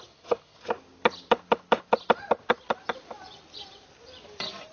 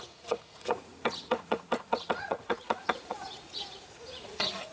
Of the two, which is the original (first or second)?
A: first